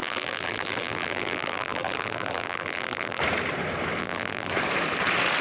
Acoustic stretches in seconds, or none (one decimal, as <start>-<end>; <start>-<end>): 3.2-4.0; 4.5-5.4